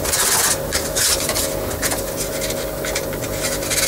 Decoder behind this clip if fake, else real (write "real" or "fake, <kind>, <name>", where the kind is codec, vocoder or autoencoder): real